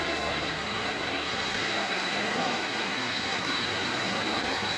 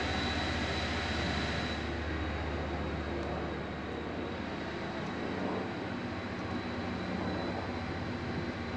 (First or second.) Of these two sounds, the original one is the second